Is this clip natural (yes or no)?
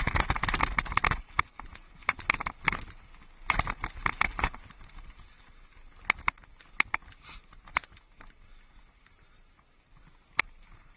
yes